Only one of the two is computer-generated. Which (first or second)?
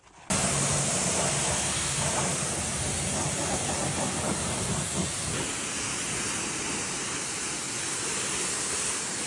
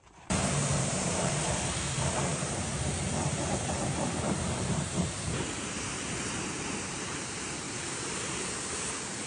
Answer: second